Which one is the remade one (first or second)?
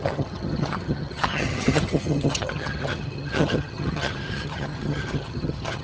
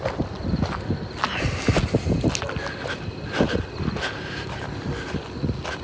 first